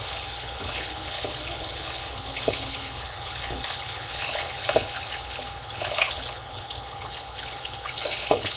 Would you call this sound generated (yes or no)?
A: yes